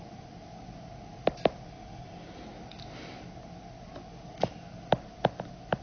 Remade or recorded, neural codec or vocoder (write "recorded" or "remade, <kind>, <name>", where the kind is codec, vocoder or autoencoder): recorded